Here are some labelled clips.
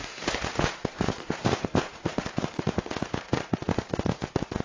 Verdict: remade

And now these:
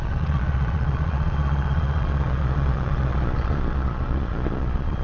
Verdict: remade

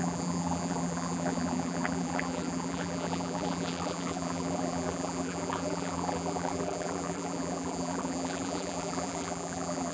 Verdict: remade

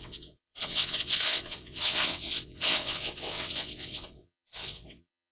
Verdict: remade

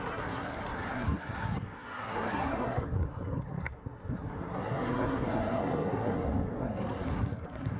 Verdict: remade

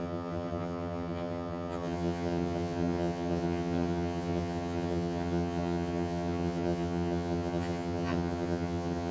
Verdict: remade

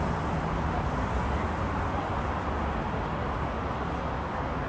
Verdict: recorded